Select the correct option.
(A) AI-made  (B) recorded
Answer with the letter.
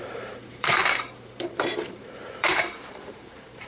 A